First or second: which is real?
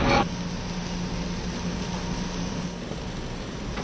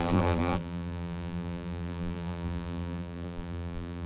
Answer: first